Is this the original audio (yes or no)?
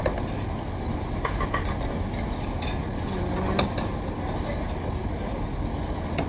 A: yes